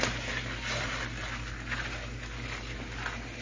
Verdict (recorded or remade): recorded